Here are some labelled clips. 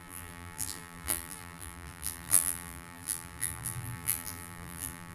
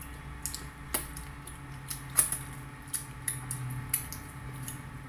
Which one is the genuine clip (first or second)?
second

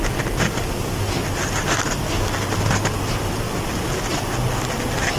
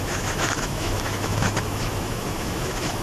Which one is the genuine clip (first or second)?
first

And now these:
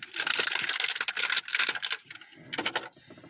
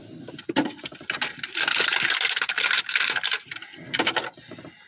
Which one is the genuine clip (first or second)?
first